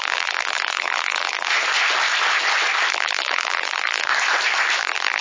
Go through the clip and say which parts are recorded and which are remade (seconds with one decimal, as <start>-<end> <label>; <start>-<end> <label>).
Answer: 0.0-1.5 remade; 1.5-2.9 recorded; 2.9-4.1 remade; 4.1-4.8 recorded; 4.8-5.2 remade